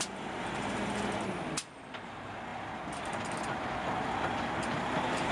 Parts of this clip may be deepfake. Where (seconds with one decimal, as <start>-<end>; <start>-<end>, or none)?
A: none